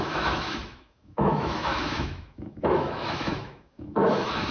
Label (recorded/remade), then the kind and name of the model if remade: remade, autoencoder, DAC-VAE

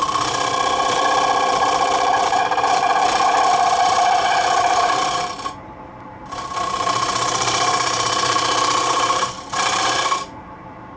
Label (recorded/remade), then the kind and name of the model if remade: remade, vocoder, BigVGAN v2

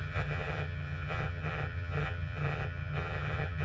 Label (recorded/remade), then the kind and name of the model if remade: remade, vocoder, HiFi-GAN